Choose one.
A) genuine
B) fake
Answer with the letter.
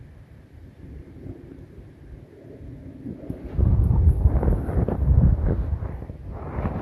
A